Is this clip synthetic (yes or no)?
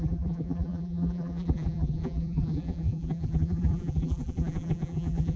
yes